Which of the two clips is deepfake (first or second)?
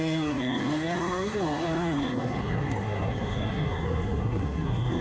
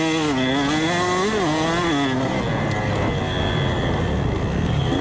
first